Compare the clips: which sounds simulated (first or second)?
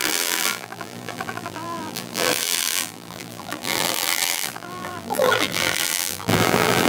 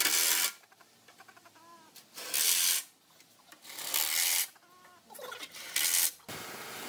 first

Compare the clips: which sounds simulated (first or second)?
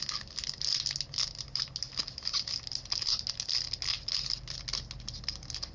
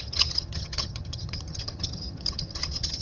second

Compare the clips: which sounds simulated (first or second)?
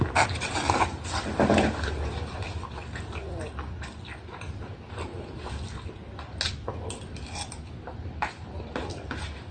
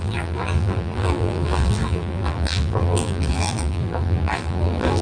second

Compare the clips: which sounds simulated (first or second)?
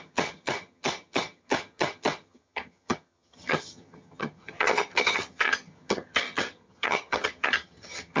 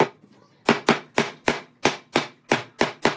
first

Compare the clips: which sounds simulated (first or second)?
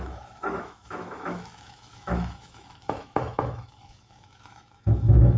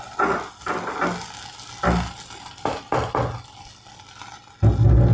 first